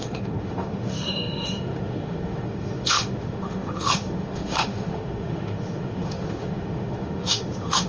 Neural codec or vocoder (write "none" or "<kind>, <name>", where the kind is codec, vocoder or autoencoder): autoencoder, DAC-VAE